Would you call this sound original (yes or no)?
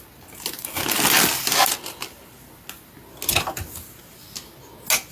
yes